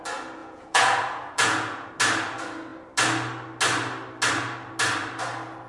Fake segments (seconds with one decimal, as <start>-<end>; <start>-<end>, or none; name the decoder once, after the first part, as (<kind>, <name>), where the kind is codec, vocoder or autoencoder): 0.4-1.9 (vocoder, Vocos)